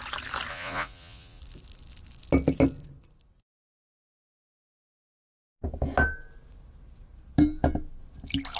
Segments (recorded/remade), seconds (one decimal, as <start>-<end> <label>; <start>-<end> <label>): 0.0-0.5 recorded; 0.5-1.4 remade; 1.4-8.6 recorded